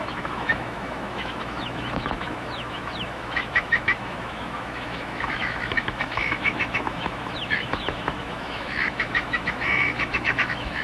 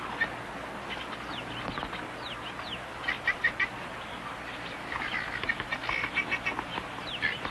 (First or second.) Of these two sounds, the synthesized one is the first